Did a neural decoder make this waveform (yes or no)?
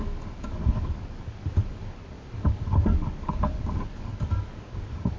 yes